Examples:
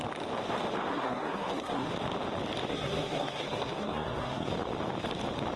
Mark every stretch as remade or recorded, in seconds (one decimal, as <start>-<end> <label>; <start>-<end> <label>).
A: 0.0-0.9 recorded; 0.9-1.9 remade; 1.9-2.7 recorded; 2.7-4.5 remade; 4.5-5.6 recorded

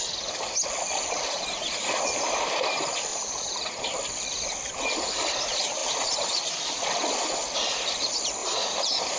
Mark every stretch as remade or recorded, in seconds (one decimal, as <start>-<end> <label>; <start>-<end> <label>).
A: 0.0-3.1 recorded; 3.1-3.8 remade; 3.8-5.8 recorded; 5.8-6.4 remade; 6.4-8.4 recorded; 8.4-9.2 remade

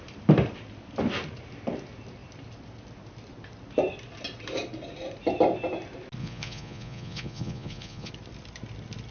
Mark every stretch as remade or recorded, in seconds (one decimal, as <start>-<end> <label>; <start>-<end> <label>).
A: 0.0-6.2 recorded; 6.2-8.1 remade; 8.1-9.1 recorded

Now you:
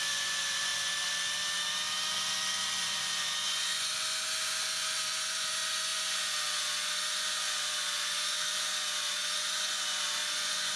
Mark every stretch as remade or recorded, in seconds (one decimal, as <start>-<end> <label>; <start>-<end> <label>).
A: 0.0-0.7 remade; 0.7-2.8 recorded; 2.8-10.8 remade

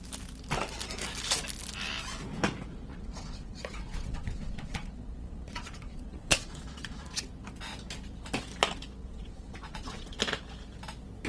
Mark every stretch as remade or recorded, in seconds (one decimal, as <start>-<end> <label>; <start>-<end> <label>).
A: 0.0-2.9 recorded; 2.9-7.2 remade; 7.2-9.0 recorded; 9.0-10.2 remade; 10.2-11.3 recorded